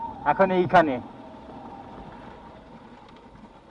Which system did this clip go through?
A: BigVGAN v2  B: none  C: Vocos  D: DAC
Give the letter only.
B